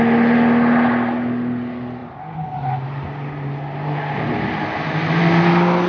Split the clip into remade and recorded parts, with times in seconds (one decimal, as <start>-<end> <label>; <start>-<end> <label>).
0.0-5.9 recorded